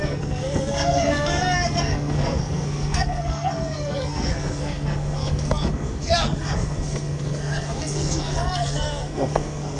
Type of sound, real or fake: fake